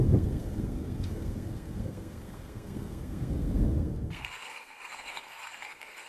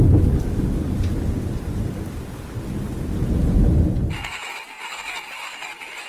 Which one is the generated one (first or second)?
first